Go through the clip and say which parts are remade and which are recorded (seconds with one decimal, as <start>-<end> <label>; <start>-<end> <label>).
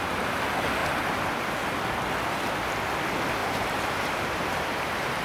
0.0-0.8 recorded; 0.8-1.5 remade; 1.5-3.4 recorded; 3.4-5.2 remade